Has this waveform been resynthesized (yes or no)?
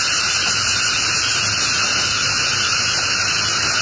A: no